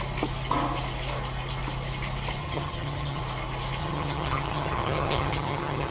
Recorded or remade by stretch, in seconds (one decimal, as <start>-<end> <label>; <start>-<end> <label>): 0.0-2.4 recorded; 2.4-3.2 remade; 3.2-3.8 recorded; 3.8-5.9 remade